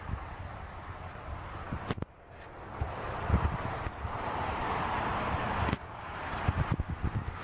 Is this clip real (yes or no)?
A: yes